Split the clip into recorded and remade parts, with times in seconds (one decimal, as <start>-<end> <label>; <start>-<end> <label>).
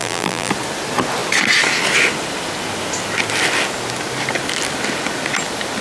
0.0-0.5 remade; 0.5-5.8 recorded